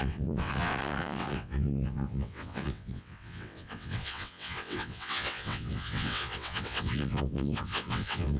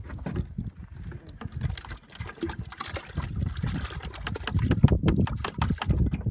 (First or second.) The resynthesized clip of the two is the first